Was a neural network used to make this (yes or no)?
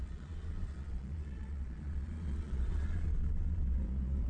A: yes